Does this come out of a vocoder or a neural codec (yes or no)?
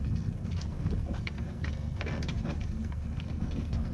yes